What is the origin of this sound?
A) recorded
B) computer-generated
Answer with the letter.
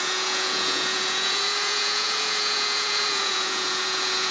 B